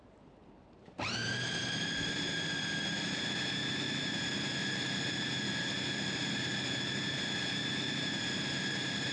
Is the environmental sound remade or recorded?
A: remade